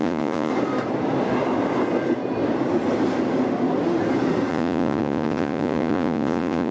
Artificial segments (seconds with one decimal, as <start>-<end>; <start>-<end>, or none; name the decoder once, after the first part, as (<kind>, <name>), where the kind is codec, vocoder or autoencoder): 0.0-0.5 (vocoder, Vocos); 4.5-6.7